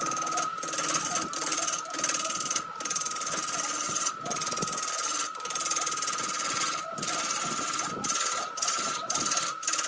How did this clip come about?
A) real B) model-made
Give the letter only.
A